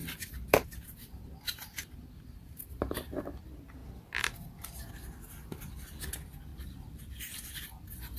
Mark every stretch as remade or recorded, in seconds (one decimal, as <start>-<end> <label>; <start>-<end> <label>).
0.0-3.4 remade; 3.4-6.5 recorded; 6.5-7.0 remade; 7.0-8.2 recorded